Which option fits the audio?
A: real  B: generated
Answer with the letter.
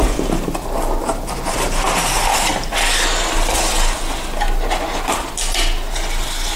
A